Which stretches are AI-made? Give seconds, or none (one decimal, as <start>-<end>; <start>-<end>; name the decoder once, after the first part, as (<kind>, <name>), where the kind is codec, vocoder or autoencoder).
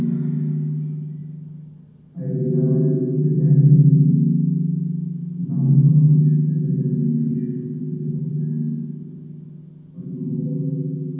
7.8-8.3 (codec, DAC)